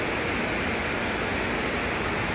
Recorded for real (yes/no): yes